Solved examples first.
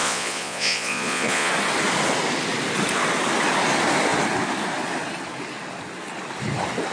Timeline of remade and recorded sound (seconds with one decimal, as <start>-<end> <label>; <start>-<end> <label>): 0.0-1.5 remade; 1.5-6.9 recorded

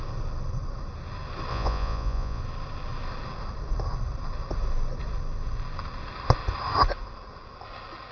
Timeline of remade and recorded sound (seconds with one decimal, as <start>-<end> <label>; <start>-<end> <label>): 0.0-1.5 recorded; 1.5-2.4 remade; 2.4-8.1 recorded

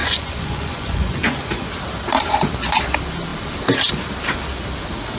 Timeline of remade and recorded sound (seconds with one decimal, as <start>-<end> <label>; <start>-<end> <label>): 0.0-1.7 remade; 1.7-5.2 recorded

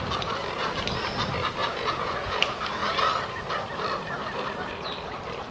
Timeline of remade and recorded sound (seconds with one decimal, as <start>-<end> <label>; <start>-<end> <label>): 0.0-1.6 recorded; 1.6-2.4 remade; 2.4-5.5 recorded